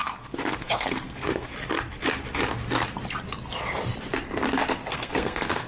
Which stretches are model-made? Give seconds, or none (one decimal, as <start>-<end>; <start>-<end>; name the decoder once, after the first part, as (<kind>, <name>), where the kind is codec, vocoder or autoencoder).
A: 0.0-1.5 (codec, SNAC); 4.9-5.7